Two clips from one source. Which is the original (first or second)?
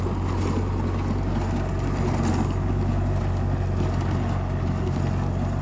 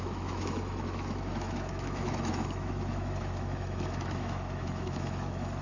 first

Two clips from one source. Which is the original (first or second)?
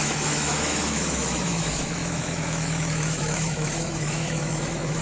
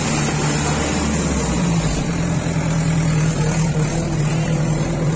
second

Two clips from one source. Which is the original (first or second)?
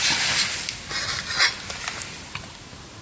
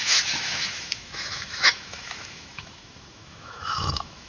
first